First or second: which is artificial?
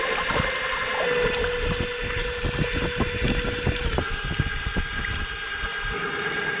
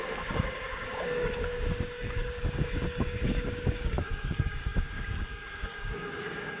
second